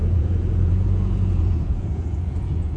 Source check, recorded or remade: remade